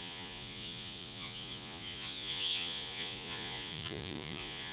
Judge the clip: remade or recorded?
remade